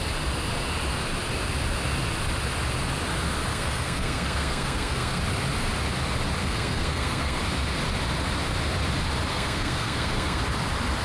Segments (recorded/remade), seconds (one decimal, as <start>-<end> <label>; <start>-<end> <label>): 0.0-3.5 recorded; 3.5-5.2 remade; 5.2-6.4 recorded; 6.4-7.4 remade; 7.4-9.3 recorded; 9.3-10.4 remade; 10.4-11.0 recorded